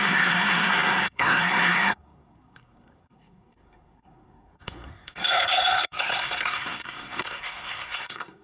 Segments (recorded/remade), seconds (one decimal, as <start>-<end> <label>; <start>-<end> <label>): 0.0-8.4 remade